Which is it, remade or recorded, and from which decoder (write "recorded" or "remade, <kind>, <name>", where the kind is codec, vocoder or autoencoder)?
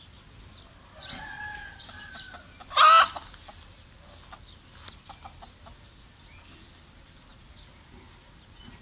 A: recorded